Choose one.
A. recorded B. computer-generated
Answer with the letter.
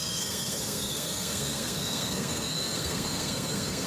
B